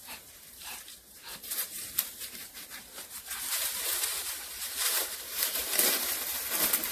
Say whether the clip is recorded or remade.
remade